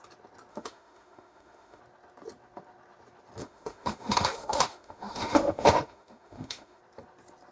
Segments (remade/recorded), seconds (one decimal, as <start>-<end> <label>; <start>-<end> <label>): 0.0-0.5 recorded; 0.5-1.8 remade; 1.8-3.4 recorded; 3.4-6.8 remade; 6.8-7.5 recorded